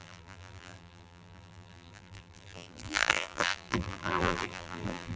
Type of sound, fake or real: fake